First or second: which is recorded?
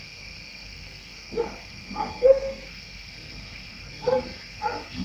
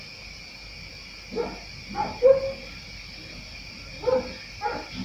second